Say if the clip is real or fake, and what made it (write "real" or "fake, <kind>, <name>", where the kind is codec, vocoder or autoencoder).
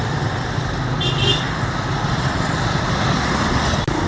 real